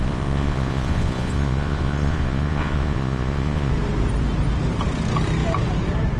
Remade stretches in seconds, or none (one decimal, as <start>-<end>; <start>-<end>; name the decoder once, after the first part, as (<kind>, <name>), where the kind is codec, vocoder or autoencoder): 0.0-3.7 (vocoder, Vocos)